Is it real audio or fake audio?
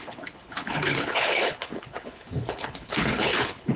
fake